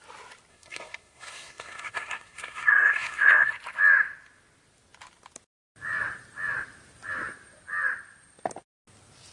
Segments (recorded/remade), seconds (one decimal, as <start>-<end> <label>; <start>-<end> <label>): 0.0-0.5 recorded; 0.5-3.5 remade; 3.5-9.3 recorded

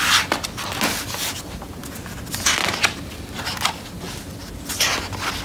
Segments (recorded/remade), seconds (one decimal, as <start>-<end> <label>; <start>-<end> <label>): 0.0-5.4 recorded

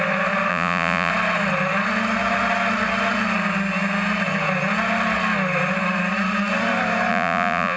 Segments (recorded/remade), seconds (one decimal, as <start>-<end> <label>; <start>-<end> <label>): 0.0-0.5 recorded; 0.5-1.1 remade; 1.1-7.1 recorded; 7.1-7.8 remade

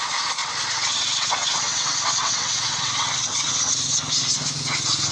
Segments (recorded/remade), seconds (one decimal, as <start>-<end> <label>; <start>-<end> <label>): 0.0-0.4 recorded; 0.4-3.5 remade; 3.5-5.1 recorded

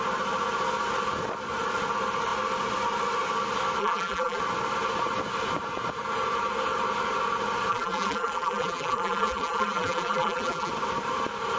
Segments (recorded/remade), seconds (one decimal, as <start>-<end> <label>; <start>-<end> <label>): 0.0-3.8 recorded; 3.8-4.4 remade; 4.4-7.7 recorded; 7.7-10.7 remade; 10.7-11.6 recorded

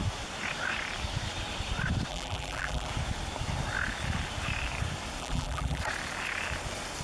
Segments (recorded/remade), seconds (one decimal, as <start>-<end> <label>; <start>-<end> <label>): 0.0-2.1 recorded; 2.1-2.9 remade; 2.9-5.2 recorded; 5.2-5.8 remade; 5.8-7.0 recorded

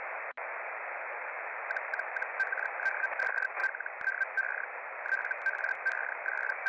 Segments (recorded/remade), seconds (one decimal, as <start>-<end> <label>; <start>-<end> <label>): 0.0-6.7 recorded